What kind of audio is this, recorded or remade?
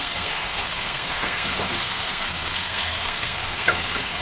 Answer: remade